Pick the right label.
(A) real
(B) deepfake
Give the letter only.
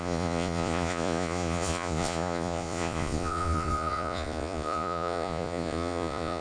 B